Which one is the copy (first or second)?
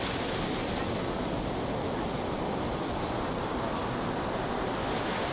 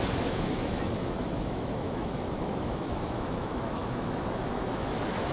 second